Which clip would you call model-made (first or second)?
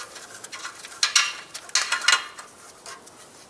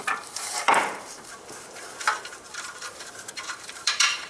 second